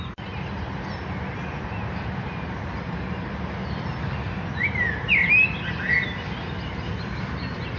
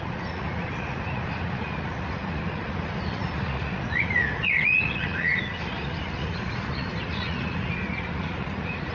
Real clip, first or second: first